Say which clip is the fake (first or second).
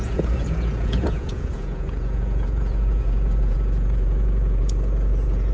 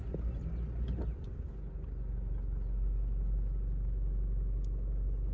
first